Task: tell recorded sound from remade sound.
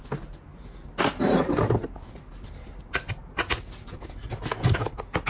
recorded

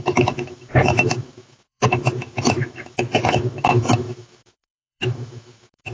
remade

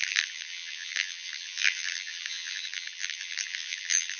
remade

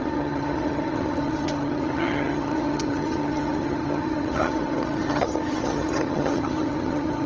remade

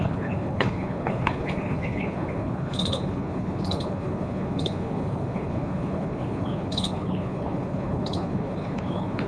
remade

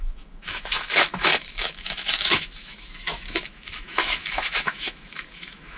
remade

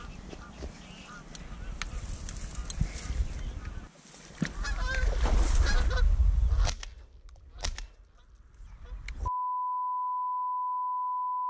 recorded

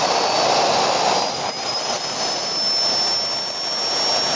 recorded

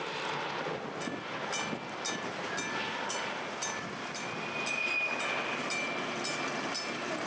recorded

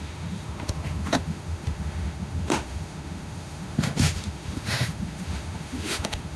remade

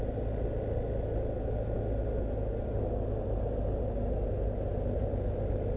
recorded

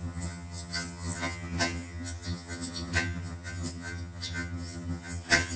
remade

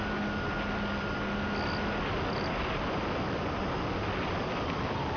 recorded